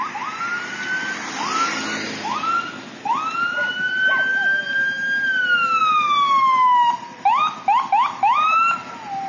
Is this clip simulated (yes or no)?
no